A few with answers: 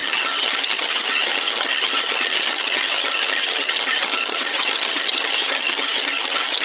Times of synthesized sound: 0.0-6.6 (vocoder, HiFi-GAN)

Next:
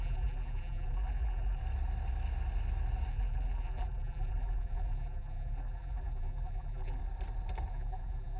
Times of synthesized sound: 0.0-1.6 (vocoder, BigVGAN v2); 3.1-7.0; 7.7-8.4

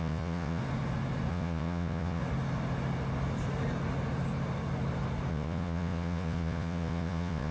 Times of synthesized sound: 0.0-0.6 (vocoder, Vocos); 1.3-2.2; 5.3-7.5

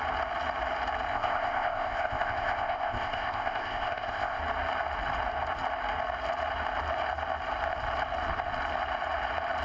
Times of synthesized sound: 1.1-4.4 (codec, ZipCodec)

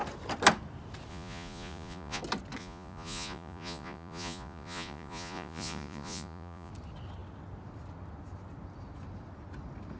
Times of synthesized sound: 1.1-2.2 (vocoder, Vocos); 2.6-6.7

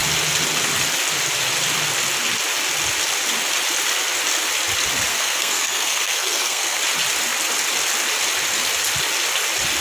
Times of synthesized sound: 5.1-6.8 (codec, SNAC)

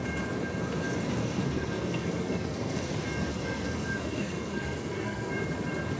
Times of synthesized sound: 1.2-2.9 (codec, SNAC); 3.3-5.3